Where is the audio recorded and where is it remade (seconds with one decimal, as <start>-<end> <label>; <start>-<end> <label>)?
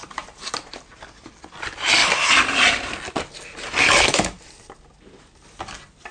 0.0-6.1 recorded